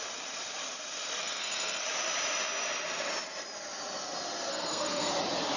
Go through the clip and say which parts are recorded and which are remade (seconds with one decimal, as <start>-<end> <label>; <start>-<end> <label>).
0.0-1.2 recorded; 1.2-1.8 remade; 1.8-4.5 recorded; 4.5-5.1 remade; 5.1-5.6 recorded